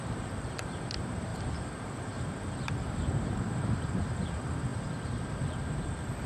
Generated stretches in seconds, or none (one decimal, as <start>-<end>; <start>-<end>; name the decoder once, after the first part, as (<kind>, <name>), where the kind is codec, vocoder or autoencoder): 1.3-4.0 (vocoder, BigVGAN v2)

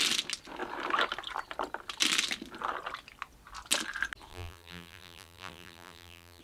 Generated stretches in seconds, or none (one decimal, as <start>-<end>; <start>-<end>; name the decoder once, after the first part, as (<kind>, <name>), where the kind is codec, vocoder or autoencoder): 4.3-6.4 (vocoder, BigVGAN v2)

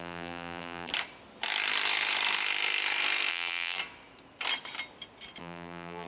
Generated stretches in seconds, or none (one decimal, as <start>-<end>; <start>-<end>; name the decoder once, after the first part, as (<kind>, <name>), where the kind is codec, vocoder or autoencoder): 0.0-0.9 (vocoder, BigVGAN v2); 3.3-3.8; 5.4-6.1

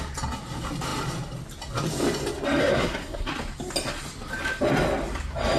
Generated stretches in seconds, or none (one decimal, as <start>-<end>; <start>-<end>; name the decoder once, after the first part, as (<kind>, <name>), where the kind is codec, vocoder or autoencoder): 2.6-3.3 (codec, SNAC)

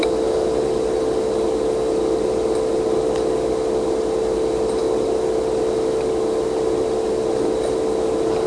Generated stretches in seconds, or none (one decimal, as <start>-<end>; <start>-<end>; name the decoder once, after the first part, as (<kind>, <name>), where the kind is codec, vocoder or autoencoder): none